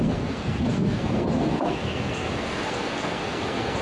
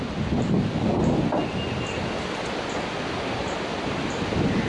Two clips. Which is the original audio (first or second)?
second